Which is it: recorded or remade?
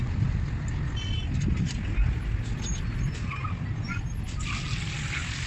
recorded